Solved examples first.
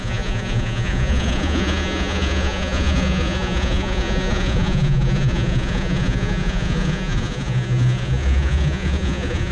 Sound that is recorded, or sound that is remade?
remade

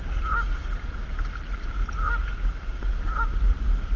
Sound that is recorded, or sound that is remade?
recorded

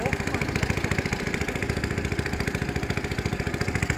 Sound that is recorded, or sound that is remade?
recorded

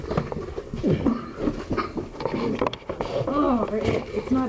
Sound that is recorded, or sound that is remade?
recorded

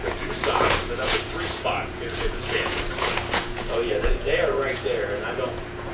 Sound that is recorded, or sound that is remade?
remade